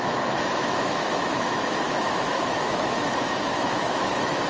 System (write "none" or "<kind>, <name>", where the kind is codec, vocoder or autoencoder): autoencoder, DAC-VAE